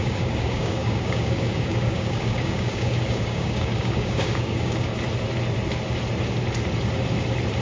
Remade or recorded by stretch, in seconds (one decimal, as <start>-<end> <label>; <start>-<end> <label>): 0.0-4.9 remade; 4.9-7.6 recorded